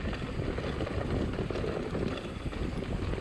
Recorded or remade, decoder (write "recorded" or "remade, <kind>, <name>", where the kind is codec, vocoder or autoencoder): recorded